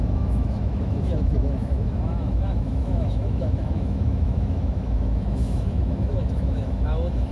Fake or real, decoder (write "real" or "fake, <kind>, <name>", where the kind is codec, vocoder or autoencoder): fake, autoencoder, DAC-VAE